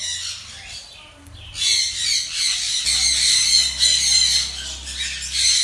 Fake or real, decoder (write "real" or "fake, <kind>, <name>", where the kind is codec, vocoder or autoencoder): real